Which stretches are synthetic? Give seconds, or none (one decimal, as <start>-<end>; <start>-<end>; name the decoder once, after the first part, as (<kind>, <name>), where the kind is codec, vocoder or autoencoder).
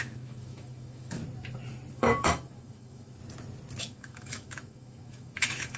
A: 0.0-1.2 (autoencoder, DAC-VAE); 1.9-3.2; 3.8-5.8